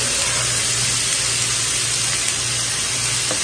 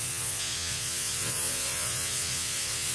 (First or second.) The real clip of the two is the first